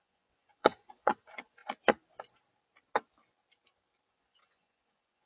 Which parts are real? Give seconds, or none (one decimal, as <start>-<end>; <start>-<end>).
1.6-4.1